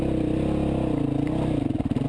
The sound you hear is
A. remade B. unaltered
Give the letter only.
B